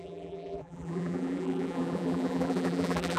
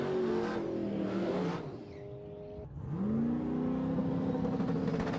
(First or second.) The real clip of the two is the second